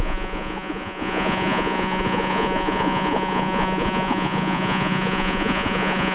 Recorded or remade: remade